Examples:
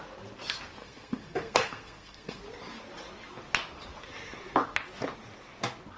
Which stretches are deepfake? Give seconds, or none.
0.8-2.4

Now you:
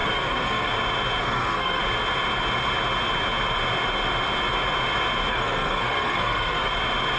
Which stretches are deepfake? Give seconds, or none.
0.0-0.7; 1.2-1.8; 5.3-6.7

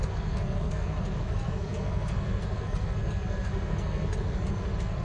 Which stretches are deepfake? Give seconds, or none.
0.0-5.0

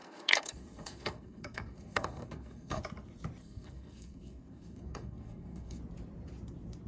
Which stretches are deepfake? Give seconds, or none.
0.0-2.8; 3.4-5.8

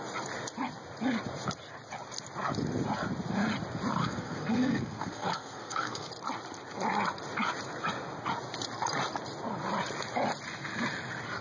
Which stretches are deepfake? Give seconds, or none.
4.0-6.1

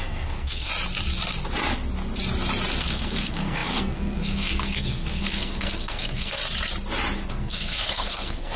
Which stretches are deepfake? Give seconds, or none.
0.0-0.7; 2.8-6.4; 7.3-8.6

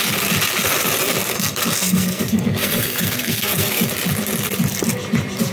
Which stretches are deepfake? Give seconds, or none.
1.2-3.9

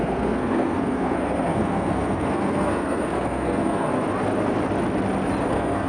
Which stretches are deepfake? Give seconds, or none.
0.0-3.9; 5.5-5.9